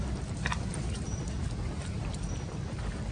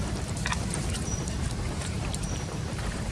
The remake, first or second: second